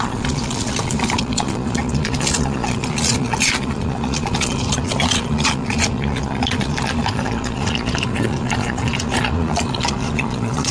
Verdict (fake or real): fake